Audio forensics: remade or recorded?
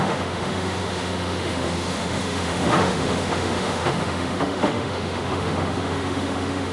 remade